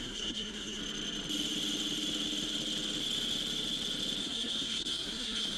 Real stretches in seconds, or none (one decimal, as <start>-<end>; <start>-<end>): 0.8-4.2